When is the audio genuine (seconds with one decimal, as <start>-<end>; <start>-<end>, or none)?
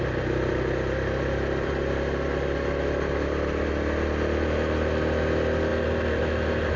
0.0-6.8